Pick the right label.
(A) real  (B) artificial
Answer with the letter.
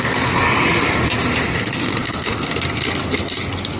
A